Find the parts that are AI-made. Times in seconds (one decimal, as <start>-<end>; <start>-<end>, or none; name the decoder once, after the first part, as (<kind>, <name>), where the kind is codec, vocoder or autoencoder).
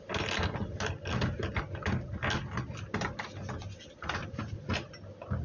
4.2-4.7 (vocoder, Vocos)